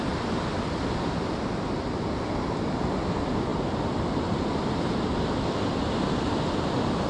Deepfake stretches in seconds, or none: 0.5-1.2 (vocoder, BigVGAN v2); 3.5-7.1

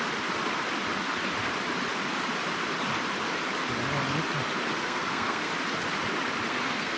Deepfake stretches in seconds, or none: 4.8-5.5 (codec, SNAC); 6.5-7.0

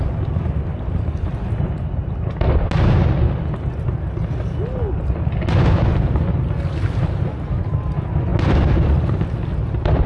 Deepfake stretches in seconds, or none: none

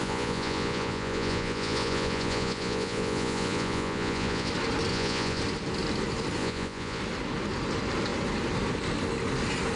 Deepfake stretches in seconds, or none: 0.0-4.5 (vocoder, Vocos); 4.9-5.4; 6.4-7.0

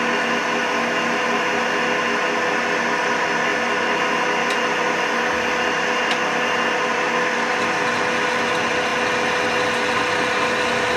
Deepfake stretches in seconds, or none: none

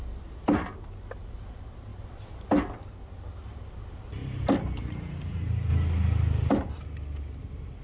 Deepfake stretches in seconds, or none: 1.9-2.6 (vocoder, BigVGAN v2); 4.2-4.8

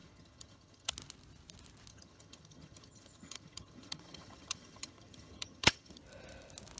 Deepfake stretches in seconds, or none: 0.0-0.9 (vocoder, HiFi-GAN); 1.9-6.0